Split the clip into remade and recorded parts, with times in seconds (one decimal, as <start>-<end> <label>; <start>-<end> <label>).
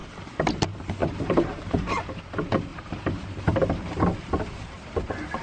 0.0-0.6 remade; 0.6-1.0 recorded; 1.0-2.2 remade; 2.2-2.7 recorded; 2.7-3.8 remade; 3.8-5.4 recorded